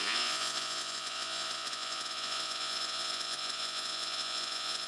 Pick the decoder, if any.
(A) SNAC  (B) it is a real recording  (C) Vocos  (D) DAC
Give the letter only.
C